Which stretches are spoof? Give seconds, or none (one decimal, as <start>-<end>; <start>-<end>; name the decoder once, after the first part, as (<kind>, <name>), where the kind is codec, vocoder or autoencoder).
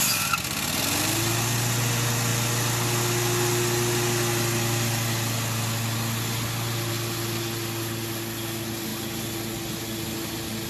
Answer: none